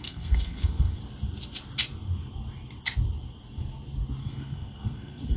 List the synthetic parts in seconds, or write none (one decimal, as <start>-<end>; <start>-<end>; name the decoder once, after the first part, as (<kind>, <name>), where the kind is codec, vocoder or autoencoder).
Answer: 0.0-1.0 (codec, SNAC); 4.2-5.4